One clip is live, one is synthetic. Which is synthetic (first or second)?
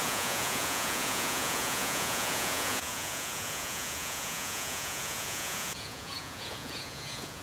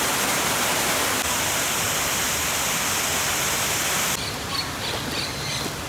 first